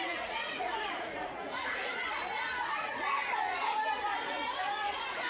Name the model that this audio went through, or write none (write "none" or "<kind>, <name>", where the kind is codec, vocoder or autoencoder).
vocoder, Vocos